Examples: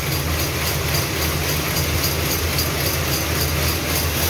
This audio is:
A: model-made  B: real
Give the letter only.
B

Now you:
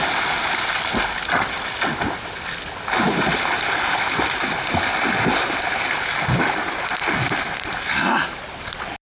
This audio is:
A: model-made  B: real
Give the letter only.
B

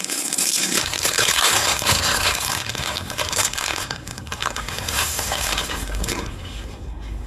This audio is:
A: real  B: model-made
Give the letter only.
B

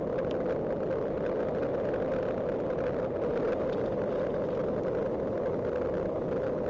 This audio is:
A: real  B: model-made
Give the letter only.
A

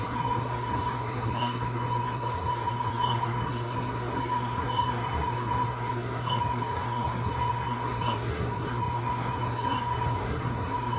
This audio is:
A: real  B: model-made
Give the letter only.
B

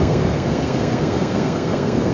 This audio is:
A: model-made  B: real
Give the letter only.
A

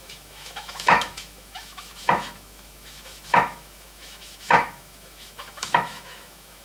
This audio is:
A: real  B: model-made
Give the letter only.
B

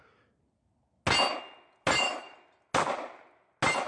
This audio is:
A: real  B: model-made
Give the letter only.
A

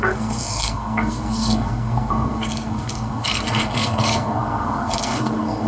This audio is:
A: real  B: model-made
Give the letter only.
B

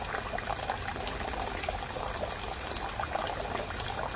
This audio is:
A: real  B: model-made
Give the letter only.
A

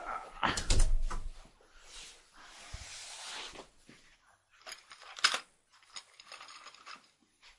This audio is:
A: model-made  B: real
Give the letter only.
B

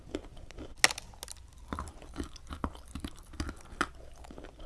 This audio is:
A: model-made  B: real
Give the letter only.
B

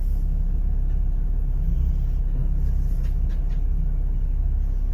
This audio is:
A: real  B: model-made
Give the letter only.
A